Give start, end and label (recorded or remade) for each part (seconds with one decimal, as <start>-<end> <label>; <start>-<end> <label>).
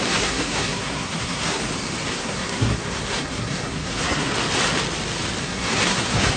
0.0-1.6 remade; 1.6-2.1 recorded; 2.1-4.3 remade; 4.3-5.4 recorded; 5.4-6.4 remade